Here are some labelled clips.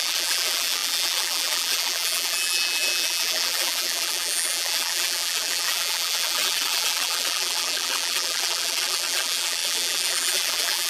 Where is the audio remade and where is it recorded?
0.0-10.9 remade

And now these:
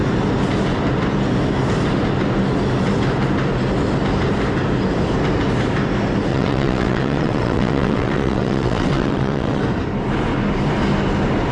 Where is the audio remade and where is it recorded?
0.0-6.3 recorded; 6.3-9.6 remade; 9.6-11.5 recorded

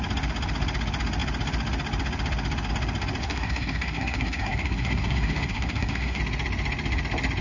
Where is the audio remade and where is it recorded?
0.0-3.2 recorded; 3.2-6.2 remade; 6.2-7.4 recorded